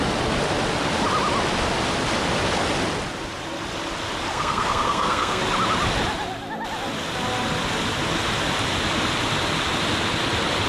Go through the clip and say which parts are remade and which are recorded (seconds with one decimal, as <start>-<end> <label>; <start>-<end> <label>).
0.0-4.3 recorded; 4.3-5.4 remade; 5.4-10.7 recorded